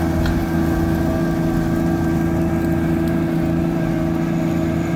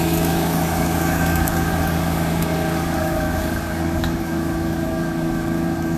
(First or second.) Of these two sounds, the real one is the first